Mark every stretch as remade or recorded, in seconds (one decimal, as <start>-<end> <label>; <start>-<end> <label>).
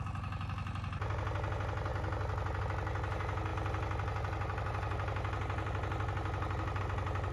0.0-7.3 recorded